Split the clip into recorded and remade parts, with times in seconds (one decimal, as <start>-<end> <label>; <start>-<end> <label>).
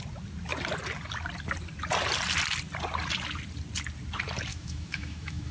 0.0-4.5 recorded; 4.5-5.5 remade